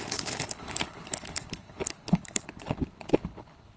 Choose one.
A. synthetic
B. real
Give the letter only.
A